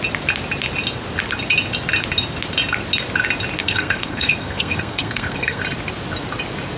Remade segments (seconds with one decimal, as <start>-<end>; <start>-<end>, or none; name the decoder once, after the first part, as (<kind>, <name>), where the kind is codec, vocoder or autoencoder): 3.6-5.6 (codec, SNAC)